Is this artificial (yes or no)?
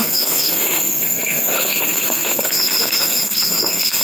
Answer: yes